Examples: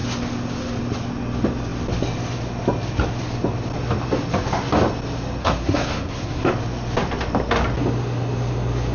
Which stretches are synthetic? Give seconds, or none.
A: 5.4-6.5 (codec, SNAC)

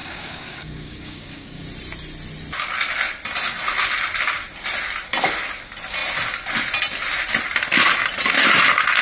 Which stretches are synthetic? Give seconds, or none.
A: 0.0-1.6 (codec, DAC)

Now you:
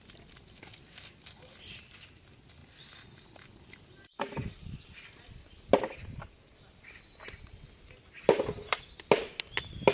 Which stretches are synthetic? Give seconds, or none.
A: none